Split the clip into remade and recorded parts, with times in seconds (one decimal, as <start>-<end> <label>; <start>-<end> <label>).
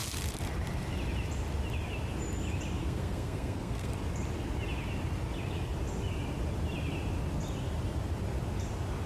0.0-2.8 recorded; 2.8-3.9 remade; 3.9-9.1 recorded